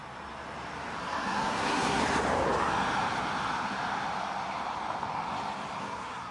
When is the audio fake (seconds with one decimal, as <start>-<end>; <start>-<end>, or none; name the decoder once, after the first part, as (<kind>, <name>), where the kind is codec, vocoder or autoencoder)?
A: 1.0-2.0 (codec, SNAC); 5.8-6.3